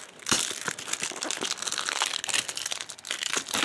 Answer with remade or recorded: recorded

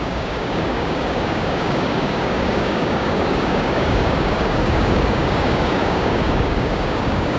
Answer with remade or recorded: remade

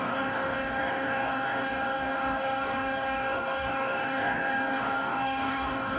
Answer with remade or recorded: remade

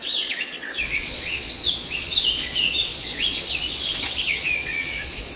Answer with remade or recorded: remade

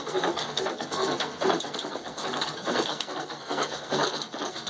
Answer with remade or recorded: remade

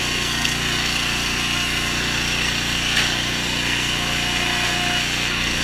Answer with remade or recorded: remade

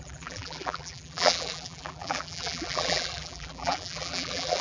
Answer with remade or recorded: remade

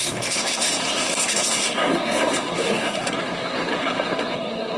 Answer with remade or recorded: remade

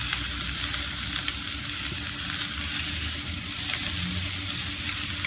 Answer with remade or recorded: recorded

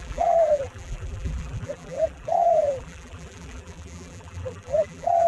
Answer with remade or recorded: remade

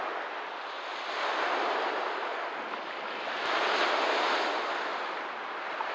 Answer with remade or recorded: recorded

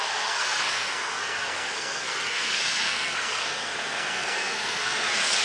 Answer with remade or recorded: remade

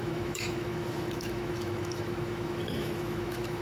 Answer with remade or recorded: remade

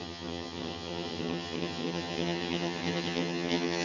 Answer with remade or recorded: remade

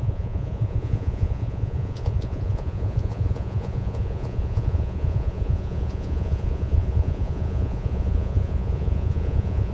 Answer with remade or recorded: remade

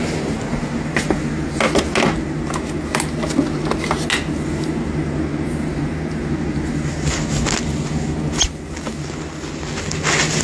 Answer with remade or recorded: recorded